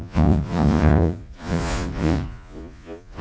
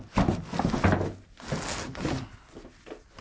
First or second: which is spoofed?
first